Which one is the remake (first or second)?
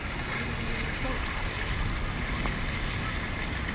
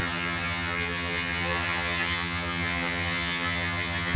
second